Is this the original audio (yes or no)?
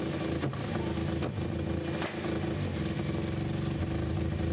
yes